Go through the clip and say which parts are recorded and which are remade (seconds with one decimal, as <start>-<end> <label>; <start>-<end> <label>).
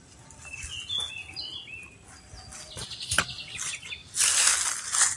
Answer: 0.0-5.2 recorded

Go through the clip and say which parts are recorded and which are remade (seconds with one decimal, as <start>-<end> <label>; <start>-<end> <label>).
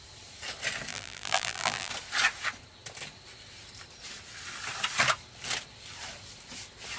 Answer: 0.0-0.9 recorded; 0.9-1.9 remade; 1.9-7.0 recorded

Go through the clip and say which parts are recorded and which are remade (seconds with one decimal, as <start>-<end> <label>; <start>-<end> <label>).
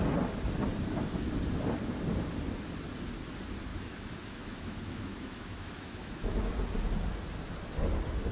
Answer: 0.0-3.7 recorded; 3.7-6.5 remade; 6.5-8.3 recorded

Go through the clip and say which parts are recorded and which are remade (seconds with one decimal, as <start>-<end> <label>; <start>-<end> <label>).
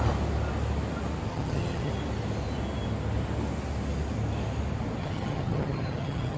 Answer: 0.0-1.3 recorded; 1.3-1.9 remade; 1.9-5.0 recorded; 5.0-6.4 remade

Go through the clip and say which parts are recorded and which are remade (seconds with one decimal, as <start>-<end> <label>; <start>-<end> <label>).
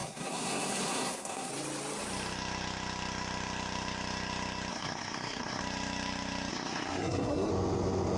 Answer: 0.0-1.5 remade; 1.5-4.7 recorded; 4.7-5.6 remade; 5.6-6.5 recorded; 6.5-7.5 remade; 7.5-8.2 recorded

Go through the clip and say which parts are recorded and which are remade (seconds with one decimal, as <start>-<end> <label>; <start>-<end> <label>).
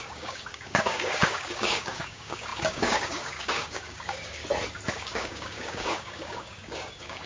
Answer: 0.0-4.4 remade; 4.4-4.9 recorded; 4.9-7.3 remade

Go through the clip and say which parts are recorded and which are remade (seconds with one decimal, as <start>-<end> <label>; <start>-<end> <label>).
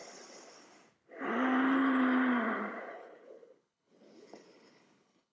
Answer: 0.0-2.9 recorded; 2.9-5.3 remade